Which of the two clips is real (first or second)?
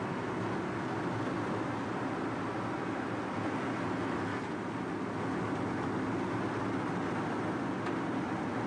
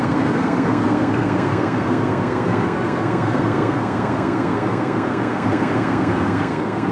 first